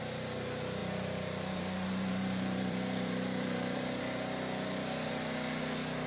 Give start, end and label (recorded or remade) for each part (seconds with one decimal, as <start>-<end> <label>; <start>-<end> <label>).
0.0-0.8 recorded; 0.8-4.0 remade; 4.0-6.1 recorded